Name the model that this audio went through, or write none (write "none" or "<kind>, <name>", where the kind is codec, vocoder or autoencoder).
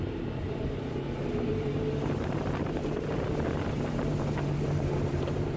vocoder, BigVGAN v2